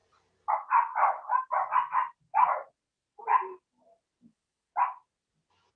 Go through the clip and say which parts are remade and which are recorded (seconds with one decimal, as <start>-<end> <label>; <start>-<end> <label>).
0.0-2.3 recorded; 2.3-5.1 remade; 5.1-5.8 recorded